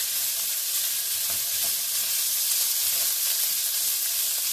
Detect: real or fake real